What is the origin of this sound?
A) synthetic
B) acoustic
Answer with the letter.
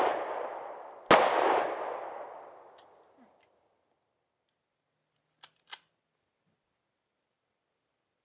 B